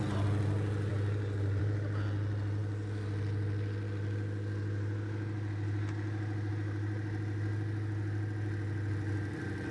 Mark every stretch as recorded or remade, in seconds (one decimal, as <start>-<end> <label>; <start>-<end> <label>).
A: 0.0-9.7 recorded